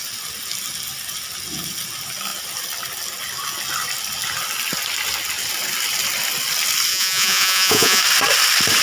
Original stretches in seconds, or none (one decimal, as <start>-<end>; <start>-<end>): 0.0-6.9; 8.0-8.8

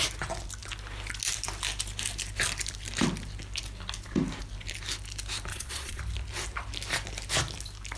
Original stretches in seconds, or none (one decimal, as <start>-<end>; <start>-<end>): 0.0-5.5; 6.0-8.0

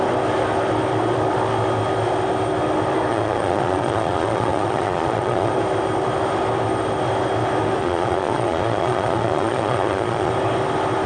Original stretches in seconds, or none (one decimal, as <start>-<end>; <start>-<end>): 0.0-3.1; 5.5-7.8; 10.3-11.1

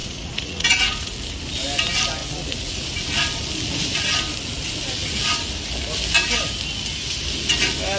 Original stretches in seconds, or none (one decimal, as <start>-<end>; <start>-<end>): 1.1-2.2; 2.9-8.0

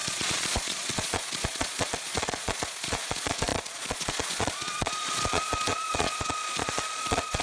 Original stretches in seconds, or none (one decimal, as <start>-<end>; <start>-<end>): none

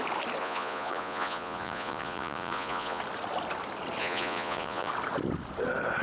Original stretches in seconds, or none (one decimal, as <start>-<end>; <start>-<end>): 0.0-0.4; 3.0-4.0; 4.9-6.0